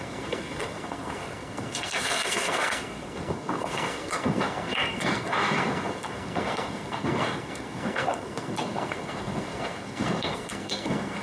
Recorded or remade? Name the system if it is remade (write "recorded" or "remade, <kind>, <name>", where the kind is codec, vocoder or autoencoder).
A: remade, codec, SNAC